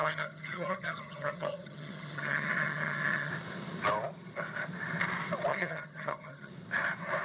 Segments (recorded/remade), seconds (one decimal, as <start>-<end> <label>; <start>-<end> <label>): 0.0-3.3 remade; 3.3-5.5 recorded; 5.5-6.5 remade; 6.5-7.2 recorded